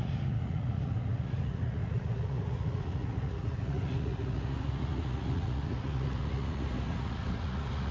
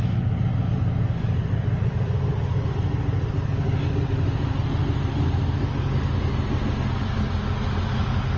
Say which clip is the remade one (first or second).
first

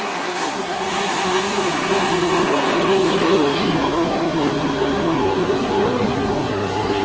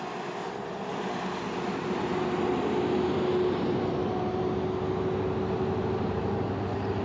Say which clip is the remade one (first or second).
first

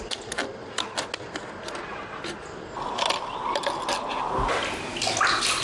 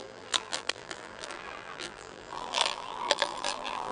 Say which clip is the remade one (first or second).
second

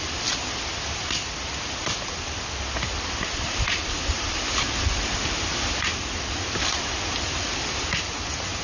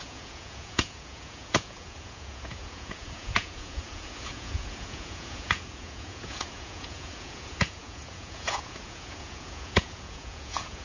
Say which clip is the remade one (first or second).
second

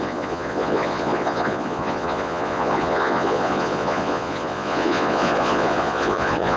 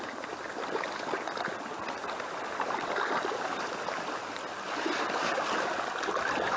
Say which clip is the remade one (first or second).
first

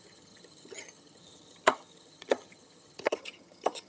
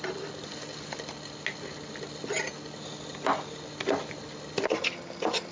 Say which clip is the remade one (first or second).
first